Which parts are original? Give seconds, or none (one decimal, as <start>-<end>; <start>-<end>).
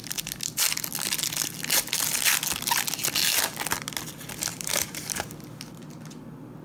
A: 0.0-4.5; 5.2-6.6